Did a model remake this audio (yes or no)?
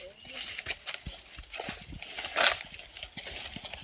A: no